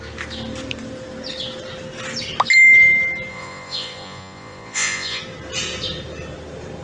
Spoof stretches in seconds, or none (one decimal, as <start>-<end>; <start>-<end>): 3.3-5.2